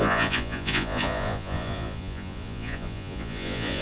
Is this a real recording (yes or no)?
no